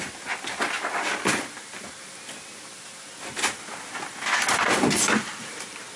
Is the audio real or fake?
real